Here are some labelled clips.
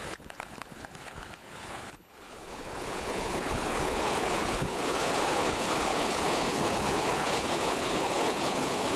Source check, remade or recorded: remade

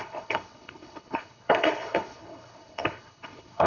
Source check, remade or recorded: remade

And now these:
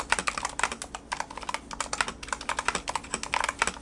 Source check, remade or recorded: recorded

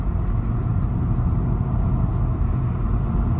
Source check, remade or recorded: recorded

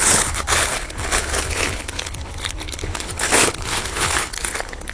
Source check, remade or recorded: remade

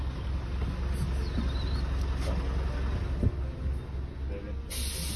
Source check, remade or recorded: recorded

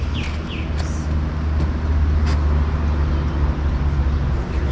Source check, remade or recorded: recorded